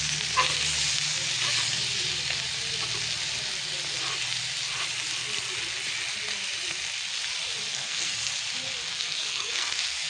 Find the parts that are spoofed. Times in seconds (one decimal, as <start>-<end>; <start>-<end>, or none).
7.7-8.3; 8.9-10.1

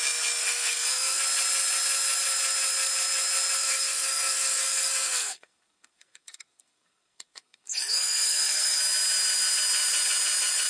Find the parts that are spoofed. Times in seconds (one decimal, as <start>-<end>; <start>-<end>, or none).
0.4-1.2; 3.6-8.8

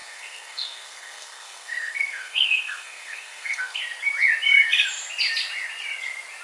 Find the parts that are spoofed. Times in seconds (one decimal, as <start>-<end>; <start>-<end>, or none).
0.0-3.8

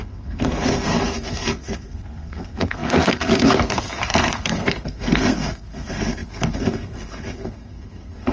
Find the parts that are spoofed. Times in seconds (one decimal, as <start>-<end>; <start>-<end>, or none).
0.0-8.3

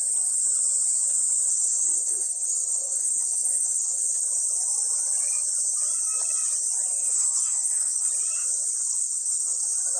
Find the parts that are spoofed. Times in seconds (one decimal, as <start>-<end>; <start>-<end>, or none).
1.5-4.0; 7.0-8.1; 8.9-9.6